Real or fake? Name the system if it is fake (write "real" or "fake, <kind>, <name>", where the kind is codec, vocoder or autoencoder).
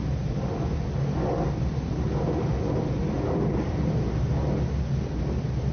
real